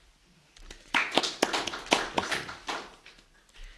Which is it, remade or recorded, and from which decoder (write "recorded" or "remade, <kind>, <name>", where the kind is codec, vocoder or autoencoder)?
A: recorded